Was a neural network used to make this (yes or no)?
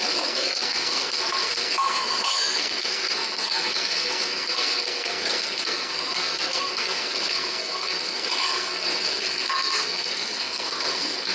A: yes